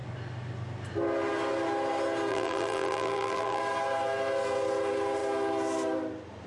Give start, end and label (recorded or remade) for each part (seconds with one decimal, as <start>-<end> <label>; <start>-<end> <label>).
0.0-2.3 recorded; 2.3-3.6 remade; 3.6-6.5 recorded